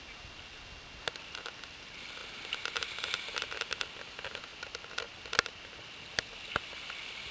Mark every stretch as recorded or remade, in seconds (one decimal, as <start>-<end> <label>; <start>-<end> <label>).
0.0-7.3 recorded